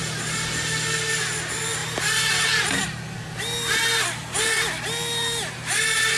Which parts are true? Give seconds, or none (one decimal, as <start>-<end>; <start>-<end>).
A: 0.0-6.2